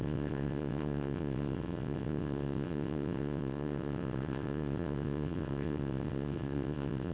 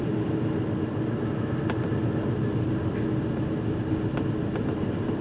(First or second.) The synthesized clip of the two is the first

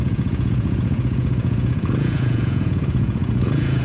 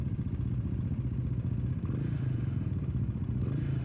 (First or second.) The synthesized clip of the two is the first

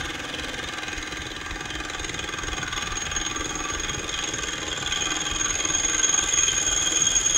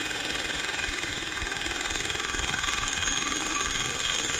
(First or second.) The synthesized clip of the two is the second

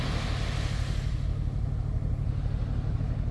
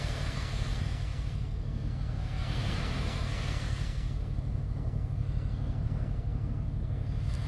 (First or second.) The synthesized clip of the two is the second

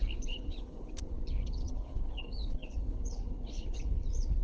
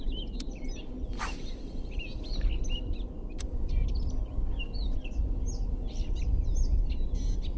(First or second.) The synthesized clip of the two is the first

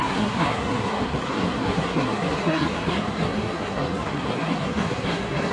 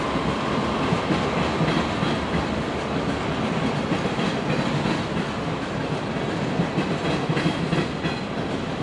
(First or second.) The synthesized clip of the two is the first